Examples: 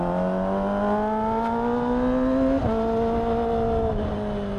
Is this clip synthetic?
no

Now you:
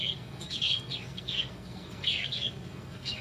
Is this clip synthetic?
yes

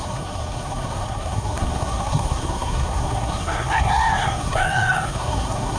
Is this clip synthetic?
yes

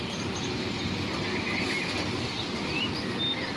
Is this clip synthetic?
no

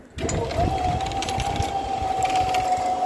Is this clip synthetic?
no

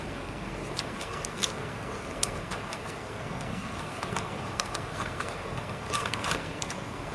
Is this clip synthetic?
yes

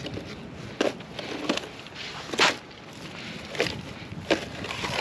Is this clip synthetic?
no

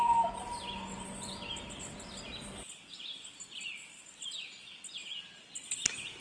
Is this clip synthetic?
no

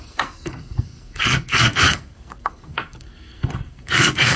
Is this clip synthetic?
yes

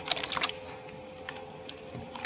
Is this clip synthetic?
no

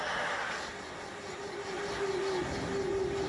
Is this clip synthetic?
no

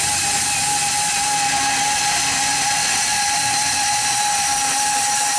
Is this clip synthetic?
no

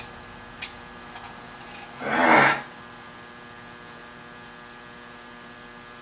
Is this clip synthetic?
no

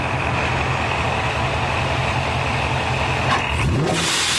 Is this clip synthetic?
no